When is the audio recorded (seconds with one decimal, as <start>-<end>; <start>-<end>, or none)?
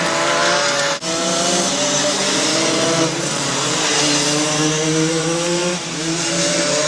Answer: 0.4-1.5; 3.9-5.1